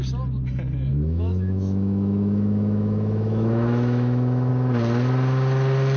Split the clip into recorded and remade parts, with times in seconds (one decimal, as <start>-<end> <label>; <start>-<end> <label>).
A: 0.0-0.9 recorded; 0.9-4.5 remade; 4.5-6.0 recorded